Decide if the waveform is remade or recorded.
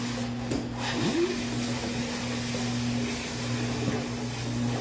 recorded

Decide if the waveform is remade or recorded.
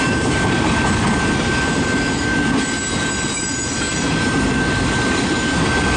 recorded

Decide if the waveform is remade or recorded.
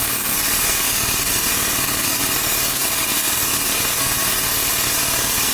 remade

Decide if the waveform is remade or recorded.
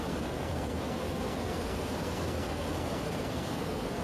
remade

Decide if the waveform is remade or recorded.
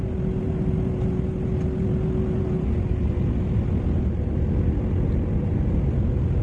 recorded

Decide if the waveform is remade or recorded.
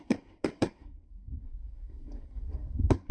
remade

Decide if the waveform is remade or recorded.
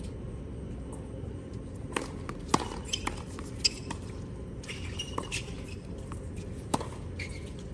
recorded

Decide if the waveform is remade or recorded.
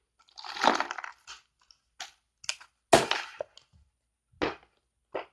recorded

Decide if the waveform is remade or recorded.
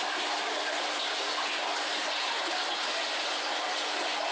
recorded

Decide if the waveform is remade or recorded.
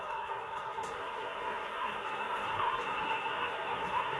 remade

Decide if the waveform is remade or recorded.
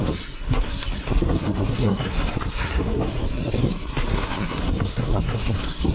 remade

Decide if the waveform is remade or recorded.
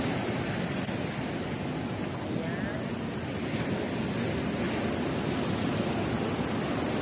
recorded